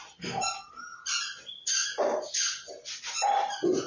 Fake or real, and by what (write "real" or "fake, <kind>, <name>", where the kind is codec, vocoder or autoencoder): real